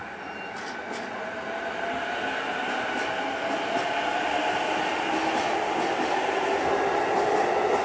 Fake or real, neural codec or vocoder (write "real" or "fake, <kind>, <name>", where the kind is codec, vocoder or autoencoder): real